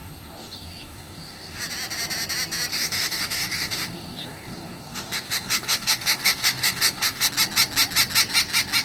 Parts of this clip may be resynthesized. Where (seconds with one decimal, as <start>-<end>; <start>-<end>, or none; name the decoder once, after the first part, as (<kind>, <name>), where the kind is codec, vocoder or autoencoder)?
0.0-1.6 (codec, DAC); 2.7-7.3